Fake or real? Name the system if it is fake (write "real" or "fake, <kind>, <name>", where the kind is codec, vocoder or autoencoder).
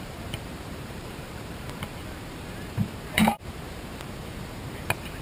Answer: fake, vocoder, BigVGAN v2